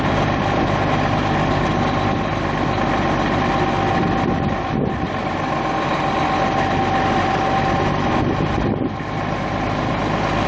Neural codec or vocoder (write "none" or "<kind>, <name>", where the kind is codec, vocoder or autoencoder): none